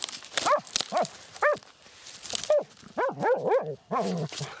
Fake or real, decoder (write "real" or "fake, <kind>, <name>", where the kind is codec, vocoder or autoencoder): real